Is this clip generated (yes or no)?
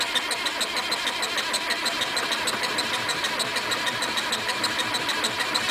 no